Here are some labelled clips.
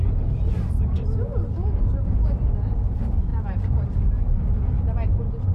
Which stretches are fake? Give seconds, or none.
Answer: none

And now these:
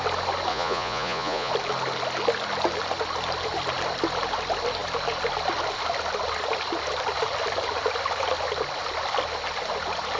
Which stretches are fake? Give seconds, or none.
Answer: 0.5-1.5 (vocoder, Vocos)

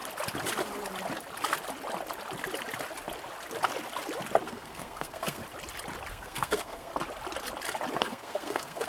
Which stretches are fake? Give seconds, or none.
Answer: 4.4-5.4 (codec, SNAC); 6.1-6.9; 7.9-8.9

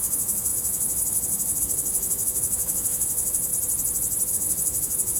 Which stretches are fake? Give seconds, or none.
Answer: 0.0-3.5 (autoencoder, DAC-VAE); 4.3-5.2

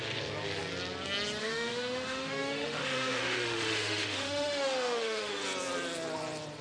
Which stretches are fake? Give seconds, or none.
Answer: 1.4-5.4 (autoencoder, DAC-VAE)